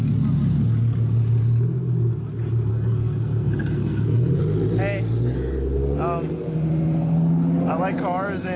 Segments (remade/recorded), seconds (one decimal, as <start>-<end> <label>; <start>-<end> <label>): 0.0-2.7 recorded; 2.7-4.4 remade; 4.4-8.6 recorded